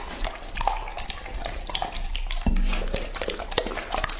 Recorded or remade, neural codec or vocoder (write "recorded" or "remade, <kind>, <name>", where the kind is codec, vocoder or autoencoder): recorded